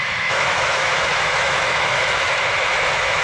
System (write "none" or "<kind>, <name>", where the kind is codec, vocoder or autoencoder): autoencoder, DAC-VAE